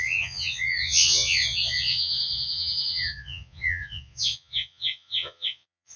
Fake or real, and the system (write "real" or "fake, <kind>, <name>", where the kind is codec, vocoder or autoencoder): fake, vocoder, Vocos